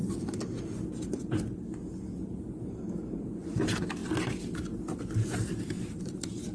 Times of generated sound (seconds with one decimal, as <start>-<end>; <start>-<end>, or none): none